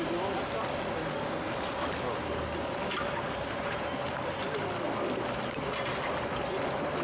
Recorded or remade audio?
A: recorded